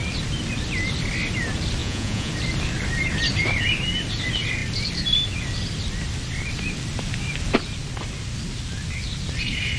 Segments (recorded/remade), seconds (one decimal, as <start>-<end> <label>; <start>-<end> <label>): 0.0-1.8 recorded; 1.8-2.3 remade; 2.3-9.8 recorded